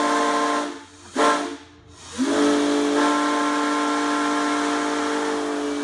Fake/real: real